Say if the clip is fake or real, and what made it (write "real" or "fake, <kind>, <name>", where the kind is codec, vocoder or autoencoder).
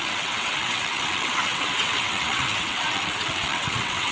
fake, vocoder, WaveNeXt